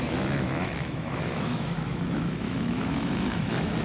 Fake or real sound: fake